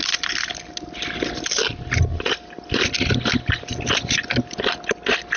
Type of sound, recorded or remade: recorded